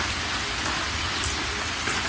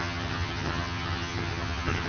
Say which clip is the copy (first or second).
second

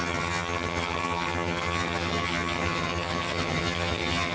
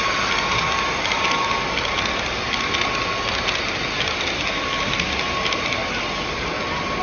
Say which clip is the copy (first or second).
first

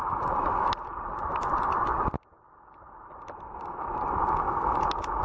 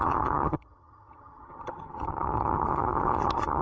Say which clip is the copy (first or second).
second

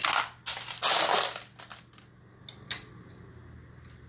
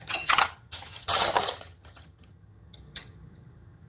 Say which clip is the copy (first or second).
second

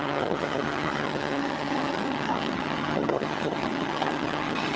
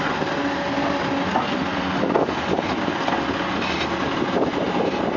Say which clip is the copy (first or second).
first